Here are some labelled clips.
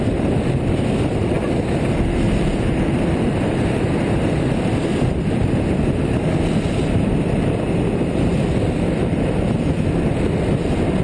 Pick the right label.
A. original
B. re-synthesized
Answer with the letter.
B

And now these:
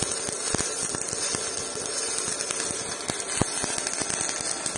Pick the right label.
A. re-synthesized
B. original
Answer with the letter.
B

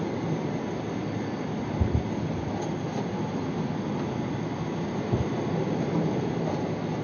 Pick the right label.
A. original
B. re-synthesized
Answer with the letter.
A